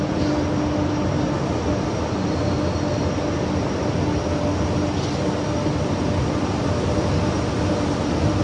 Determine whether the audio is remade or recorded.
recorded